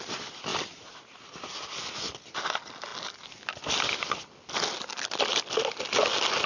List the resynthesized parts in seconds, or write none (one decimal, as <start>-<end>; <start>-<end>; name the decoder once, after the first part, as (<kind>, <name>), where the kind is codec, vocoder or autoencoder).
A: none